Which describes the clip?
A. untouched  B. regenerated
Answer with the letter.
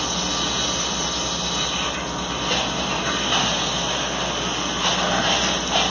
A